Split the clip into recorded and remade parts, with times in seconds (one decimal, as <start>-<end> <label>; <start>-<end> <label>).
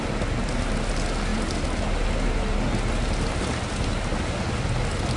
0.0-5.2 recorded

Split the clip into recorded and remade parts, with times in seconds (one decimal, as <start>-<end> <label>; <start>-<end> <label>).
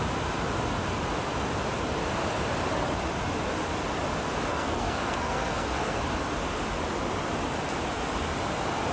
0.0-4.5 recorded; 4.5-6.0 remade; 6.0-8.9 recorded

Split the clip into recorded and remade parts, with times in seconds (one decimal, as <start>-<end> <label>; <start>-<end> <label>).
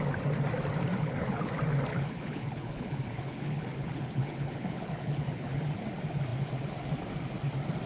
0.0-1.0 recorded; 1.0-1.5 remade; 1.5-1.9 recorded; 1.9-5.6 remade; 5.6-7.9 recorded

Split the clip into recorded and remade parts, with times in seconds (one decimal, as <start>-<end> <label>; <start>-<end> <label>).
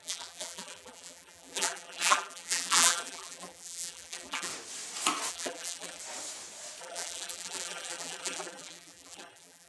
0.0-4.5 remade; 4.5-5.3 recorded; 5.3-6.0 remade; 6.0-6.8 recorded; 6.8-9.7 remade